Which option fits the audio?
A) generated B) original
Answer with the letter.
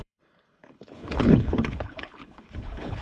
A